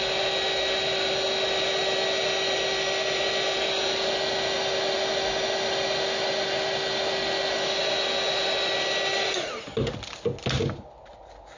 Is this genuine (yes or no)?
yes